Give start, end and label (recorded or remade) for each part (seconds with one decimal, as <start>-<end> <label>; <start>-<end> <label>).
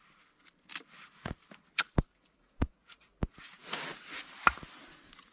0.0-2.1 recorded; 2.1-3.2 remade; 3.2-5.3 recorded